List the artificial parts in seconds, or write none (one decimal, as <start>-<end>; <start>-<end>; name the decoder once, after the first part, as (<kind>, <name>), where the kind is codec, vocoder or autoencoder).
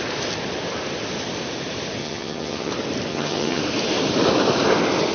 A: 2.0-2.7 (vocoder, HiFi-GAN); 3.1-3.6